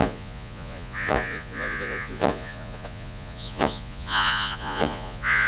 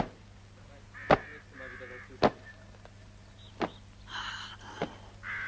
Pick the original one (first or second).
second